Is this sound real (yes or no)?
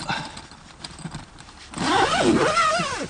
yes